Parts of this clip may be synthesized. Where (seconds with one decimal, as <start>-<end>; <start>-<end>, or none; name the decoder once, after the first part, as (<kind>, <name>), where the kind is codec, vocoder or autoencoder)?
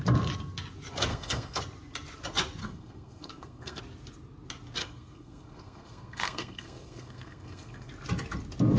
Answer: 1.1-1.6 (codec, SNAC); 2.6-3.8; 4.8-7.9